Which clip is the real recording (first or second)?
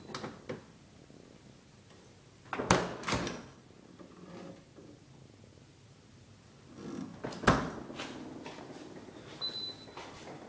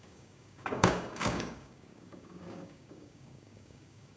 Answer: first